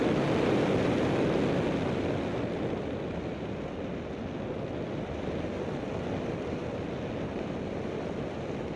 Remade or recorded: recorded